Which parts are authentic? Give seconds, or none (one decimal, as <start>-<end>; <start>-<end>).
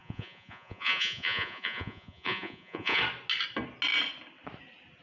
3.0-5.0